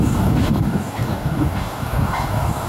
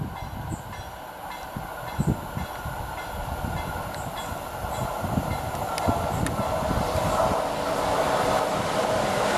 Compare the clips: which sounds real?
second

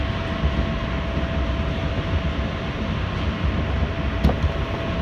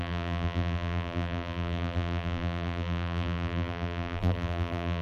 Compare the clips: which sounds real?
first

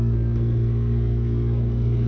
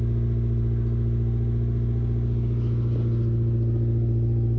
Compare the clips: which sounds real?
second